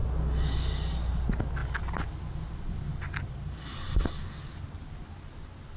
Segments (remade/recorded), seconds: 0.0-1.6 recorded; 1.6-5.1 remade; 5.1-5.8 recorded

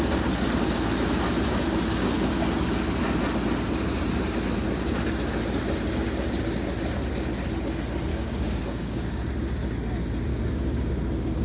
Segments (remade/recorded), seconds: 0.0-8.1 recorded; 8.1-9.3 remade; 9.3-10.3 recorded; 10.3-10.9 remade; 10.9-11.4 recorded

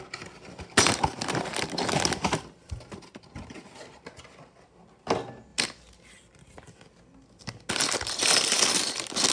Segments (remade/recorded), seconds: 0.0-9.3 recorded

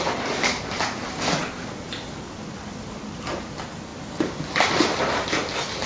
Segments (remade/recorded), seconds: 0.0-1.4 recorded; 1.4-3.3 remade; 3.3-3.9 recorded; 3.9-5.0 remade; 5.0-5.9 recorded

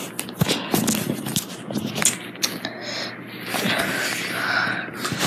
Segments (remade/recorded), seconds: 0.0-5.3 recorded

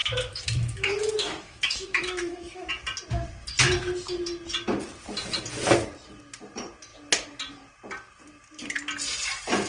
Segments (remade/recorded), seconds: 0.0-2.7 remade; 2.7-9.7 recorded